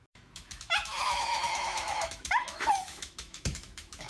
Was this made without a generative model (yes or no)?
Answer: no